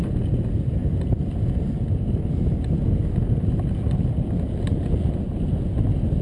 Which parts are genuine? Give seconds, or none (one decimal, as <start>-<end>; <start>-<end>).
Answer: 0.0-6.2